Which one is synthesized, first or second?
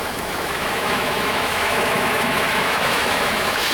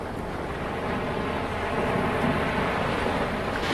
first